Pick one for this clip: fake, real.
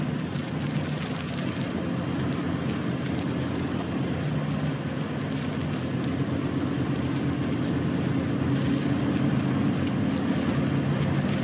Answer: real